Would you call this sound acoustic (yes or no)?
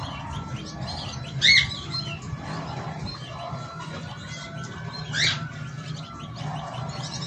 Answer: yes